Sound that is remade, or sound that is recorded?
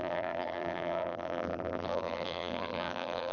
remade